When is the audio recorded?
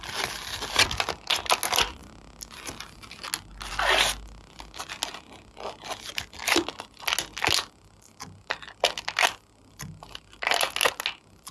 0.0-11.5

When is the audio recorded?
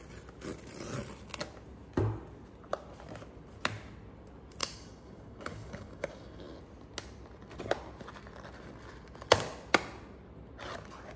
0.0-4.6; 6.6-11.2